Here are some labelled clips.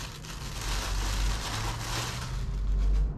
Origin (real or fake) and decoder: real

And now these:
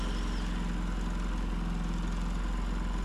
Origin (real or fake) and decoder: real